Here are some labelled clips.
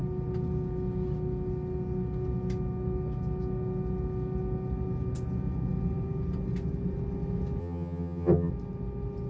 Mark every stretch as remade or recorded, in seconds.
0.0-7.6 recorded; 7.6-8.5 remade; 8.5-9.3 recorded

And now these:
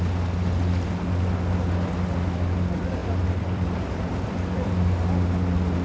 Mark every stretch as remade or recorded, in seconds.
0.0-3.0 recorded; 3.0-5.0 remade; 5.0-5.8 recorded